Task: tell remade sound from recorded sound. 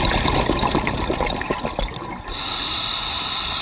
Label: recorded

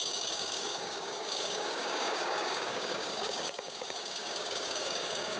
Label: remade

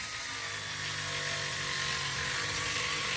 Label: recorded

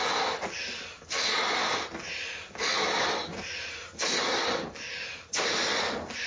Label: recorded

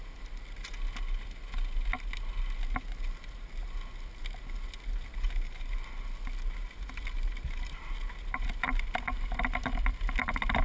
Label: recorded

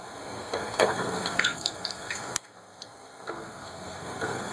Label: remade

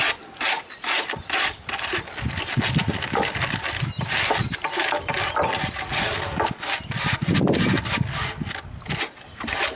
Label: recorded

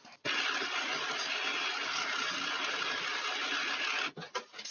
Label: recorded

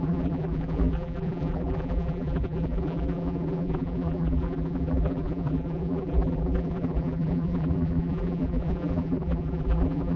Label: remade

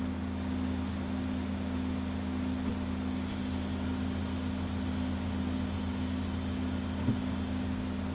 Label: recorded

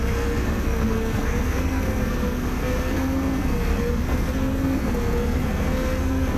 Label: remade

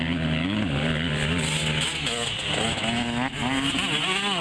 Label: recorded